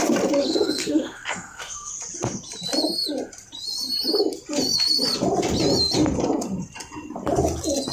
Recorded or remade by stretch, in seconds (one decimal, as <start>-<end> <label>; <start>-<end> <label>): 0.0-0.4 recorded; 0.4-1.9 remade; 1.9-7.9 recorded